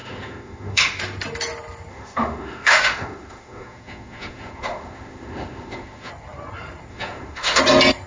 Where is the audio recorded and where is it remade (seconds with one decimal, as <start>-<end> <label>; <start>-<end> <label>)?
0.0-1.0 remade; 1.0-1.9 recorded; 1.9-6.1 remade; 6.1-6.9 recorded; 6.9-7.6 remade; 7.6-8.1 recorded